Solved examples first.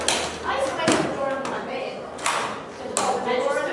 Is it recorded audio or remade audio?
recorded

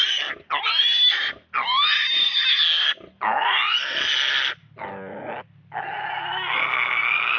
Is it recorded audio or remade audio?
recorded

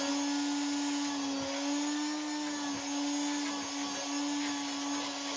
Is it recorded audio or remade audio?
recorded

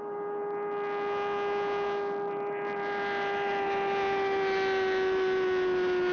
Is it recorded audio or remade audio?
recorded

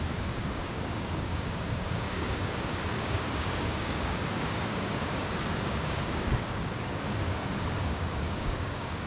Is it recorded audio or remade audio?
remade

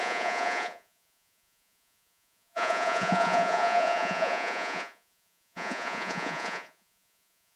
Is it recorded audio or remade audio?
remade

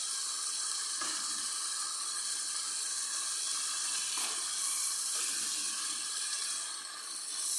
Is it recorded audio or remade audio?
remade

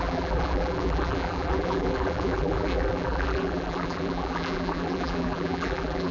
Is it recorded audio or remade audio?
remade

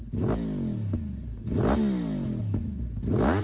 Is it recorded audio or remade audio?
recorded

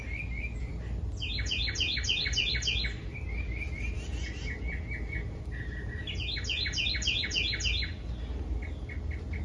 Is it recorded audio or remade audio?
recorded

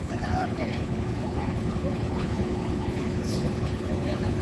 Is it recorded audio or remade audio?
remade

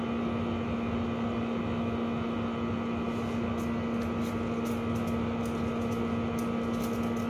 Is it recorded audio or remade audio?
recorded